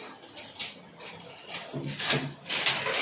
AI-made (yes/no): no